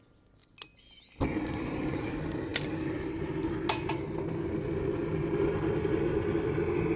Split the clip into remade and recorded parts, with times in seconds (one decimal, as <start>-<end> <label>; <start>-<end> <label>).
0.0-7.0 recorded